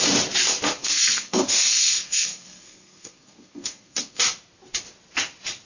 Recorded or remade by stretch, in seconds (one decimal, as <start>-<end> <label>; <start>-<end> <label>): 0.0-0.8 recorded; 0.8-4.2 remade; 4.2-5.7 recorded